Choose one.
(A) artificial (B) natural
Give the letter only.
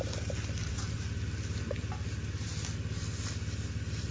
B